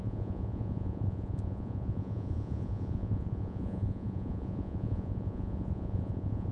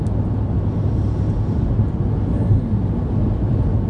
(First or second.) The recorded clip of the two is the second